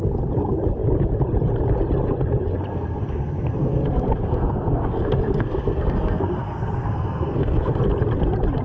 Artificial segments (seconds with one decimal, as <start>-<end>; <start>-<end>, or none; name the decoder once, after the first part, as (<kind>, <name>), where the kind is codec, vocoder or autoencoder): 2.7-7.8 (codec, SNAC)